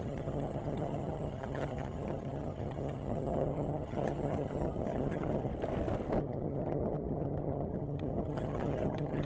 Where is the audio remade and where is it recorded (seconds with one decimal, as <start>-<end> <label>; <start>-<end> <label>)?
0.0-5.5 remade; 5.5-6.2 recorded; 6.2-9.2 remade